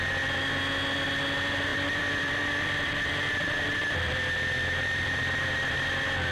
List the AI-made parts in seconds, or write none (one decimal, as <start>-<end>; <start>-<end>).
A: 1.7-5.5